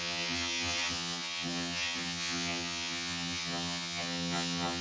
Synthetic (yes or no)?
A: yes